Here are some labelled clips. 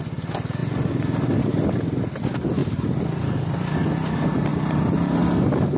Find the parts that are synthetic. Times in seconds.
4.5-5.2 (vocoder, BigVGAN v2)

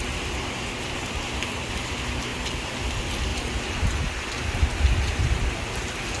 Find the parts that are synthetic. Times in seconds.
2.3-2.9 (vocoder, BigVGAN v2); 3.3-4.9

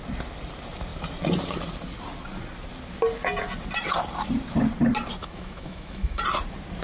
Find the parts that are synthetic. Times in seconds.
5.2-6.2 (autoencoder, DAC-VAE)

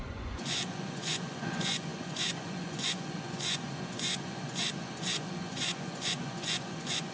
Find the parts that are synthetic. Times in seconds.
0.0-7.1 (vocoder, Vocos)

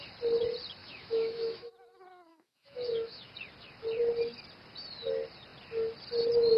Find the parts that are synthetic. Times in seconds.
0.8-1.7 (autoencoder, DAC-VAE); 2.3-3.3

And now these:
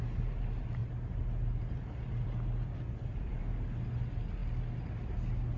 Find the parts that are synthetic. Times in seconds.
0.8-3.4 (vocoder, BigVGAN v2)